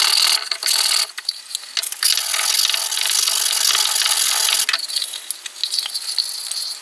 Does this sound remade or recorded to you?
recorded